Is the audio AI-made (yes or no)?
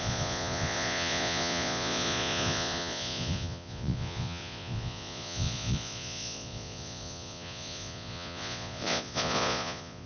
yes